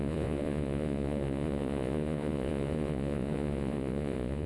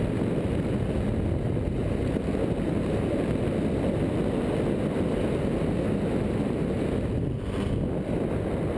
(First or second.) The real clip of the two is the second